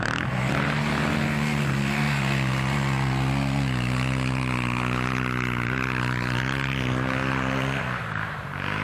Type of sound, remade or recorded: recorded